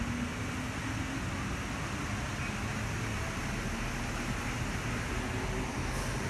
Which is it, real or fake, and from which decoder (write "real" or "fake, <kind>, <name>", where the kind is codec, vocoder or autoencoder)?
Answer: real